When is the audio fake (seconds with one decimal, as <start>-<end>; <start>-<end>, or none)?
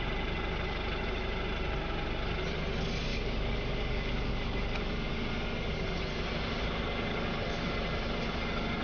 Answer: 3.1-5.1; 7.1-7.7